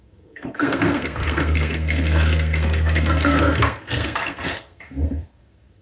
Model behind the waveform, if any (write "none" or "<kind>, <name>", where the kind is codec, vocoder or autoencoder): codec, SNAC